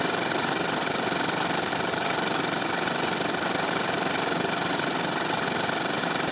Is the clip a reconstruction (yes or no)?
no